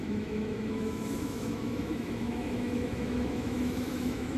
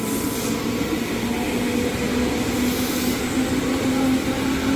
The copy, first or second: first